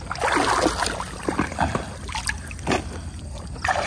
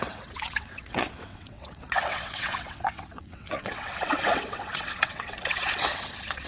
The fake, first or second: second